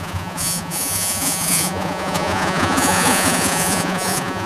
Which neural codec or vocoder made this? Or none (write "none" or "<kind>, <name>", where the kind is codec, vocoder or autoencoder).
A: vocoder, Vocos